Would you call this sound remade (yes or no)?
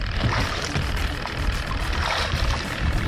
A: no